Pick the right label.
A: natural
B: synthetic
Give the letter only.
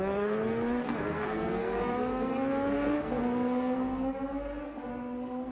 B